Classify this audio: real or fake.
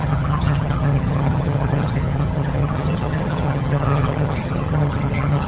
fake